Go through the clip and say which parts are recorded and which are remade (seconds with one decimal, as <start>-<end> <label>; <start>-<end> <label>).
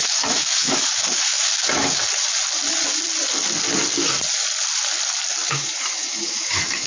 0.0-2.0 remade; 2.0-5.5 recorded; 5.5-6.9 remade